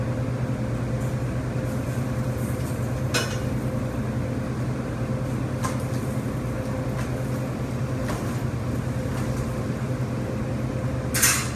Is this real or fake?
real